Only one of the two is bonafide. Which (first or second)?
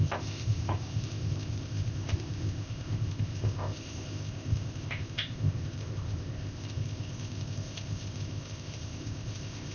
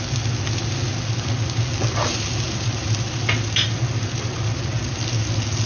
second